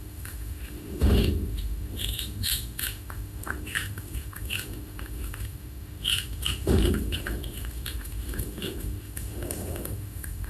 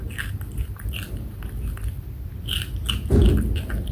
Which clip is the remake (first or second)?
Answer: first